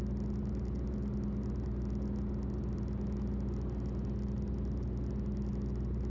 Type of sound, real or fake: real